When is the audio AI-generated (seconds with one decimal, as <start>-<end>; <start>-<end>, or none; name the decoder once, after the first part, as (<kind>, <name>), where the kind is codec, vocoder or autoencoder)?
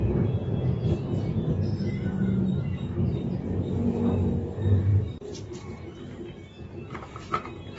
4.9-5.9 (vocoder, BigVGAN v2)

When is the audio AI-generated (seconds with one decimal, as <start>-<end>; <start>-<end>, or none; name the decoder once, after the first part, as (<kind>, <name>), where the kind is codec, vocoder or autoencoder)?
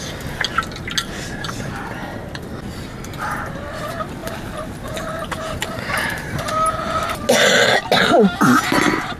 4.2-6.9 (vocoder, BigVGAN v2)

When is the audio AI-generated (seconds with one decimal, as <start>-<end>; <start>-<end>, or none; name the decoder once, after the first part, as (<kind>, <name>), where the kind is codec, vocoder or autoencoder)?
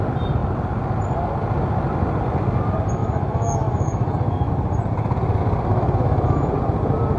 3.0-4.5 (autoencoder, DAC-VAE); 5.7-6.5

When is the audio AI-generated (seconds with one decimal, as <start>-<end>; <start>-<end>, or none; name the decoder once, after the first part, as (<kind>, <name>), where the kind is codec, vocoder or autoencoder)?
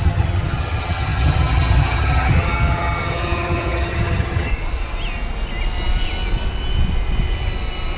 0.0-4.5 (vocoder, HiFi-GAN)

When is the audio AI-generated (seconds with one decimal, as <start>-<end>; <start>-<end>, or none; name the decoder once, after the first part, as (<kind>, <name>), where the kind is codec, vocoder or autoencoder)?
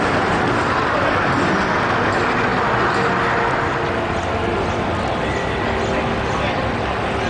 none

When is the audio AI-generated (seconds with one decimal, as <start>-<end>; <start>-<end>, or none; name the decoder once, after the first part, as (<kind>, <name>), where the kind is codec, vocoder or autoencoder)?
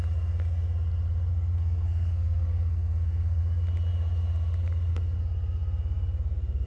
1.3-3.4 (codec, SNAC)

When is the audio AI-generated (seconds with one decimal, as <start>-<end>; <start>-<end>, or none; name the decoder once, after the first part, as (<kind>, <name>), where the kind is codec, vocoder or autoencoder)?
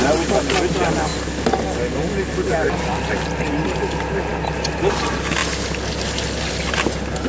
none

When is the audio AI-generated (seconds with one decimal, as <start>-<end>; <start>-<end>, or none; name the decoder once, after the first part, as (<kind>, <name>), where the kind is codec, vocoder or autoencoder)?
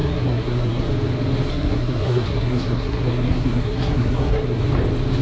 0.0-0.9 (codec, SNAC); 1.5-4.6